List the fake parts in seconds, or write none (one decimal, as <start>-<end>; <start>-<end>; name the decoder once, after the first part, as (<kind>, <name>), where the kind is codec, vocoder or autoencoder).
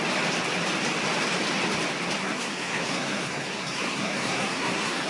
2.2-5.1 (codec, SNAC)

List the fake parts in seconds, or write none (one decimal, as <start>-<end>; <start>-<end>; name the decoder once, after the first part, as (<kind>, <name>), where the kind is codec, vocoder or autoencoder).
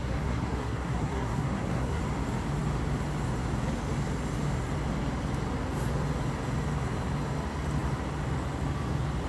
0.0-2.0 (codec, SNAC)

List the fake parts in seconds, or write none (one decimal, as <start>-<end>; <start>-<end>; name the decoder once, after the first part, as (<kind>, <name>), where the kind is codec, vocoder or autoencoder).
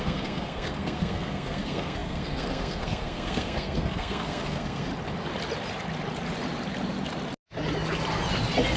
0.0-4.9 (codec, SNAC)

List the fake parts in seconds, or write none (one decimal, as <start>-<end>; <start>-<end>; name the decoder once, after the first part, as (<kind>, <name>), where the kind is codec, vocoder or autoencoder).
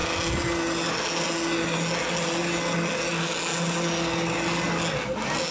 none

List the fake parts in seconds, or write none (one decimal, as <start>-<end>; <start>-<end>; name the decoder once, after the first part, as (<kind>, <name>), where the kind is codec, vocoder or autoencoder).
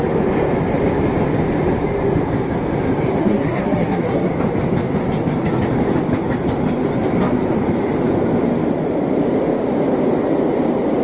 3.2-4.3 (codec, SNAC)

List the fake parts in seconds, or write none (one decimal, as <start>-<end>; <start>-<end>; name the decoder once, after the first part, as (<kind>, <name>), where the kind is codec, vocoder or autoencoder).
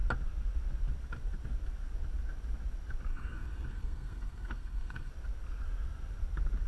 3.1-5.1 (codec, SNAC)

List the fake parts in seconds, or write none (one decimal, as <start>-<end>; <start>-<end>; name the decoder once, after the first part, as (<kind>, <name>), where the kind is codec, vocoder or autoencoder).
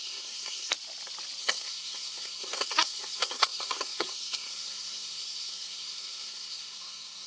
0.0-0.7 (codec, SNAC); 1.4-7.3